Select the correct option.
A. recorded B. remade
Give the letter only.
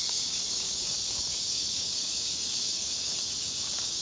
B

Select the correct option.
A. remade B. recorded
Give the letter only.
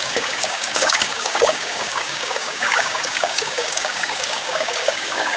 A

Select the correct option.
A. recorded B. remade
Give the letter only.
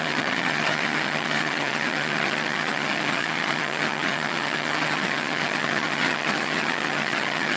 B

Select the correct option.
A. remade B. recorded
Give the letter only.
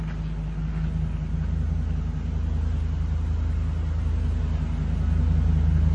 B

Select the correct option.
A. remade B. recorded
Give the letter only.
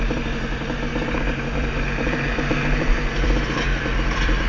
A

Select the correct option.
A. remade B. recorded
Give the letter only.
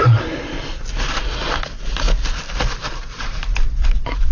B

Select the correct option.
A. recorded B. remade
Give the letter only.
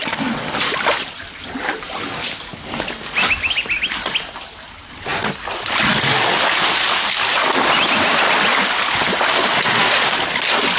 A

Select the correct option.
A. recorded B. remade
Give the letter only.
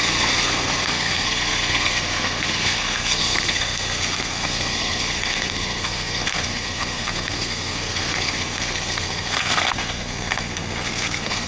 B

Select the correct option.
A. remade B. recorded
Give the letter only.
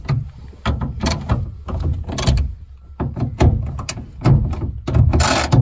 B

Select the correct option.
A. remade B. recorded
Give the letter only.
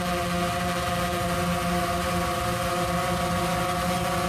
B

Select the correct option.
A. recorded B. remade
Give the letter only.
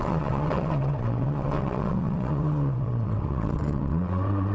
B